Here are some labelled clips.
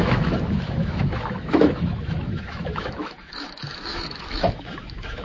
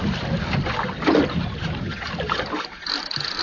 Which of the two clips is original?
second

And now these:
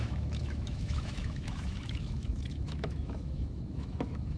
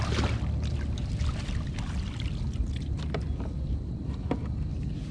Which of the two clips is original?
second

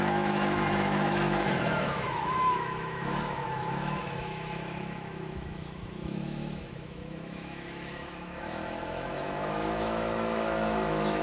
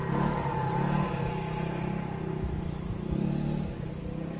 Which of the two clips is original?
second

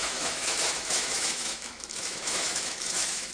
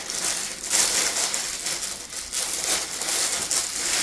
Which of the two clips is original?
second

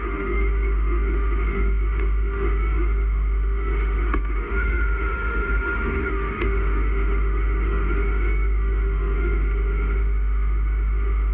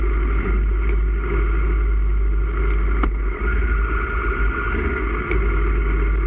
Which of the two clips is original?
second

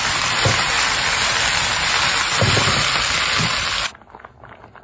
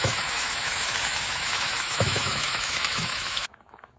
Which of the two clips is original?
first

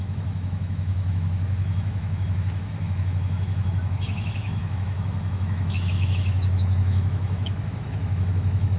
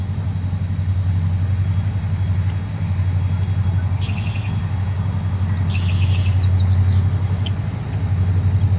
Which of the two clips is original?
second